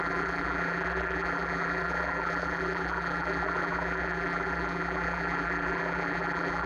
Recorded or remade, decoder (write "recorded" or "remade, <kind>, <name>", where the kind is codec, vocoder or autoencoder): remade, vocoder, BigVGAN v2